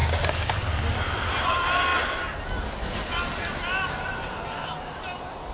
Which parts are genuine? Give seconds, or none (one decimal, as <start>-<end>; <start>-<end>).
0.0-5.5